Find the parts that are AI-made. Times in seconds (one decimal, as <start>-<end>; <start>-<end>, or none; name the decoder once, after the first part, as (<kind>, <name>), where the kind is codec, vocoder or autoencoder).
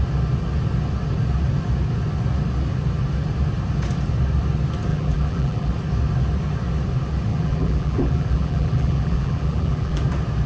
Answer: 4.9-5.7 (vocoder, BigVGAN v2); 7.3-10.0